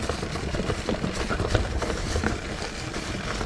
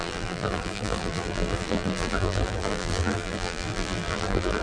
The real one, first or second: first